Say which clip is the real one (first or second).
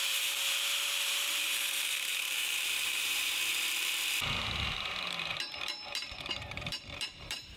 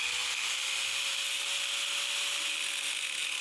second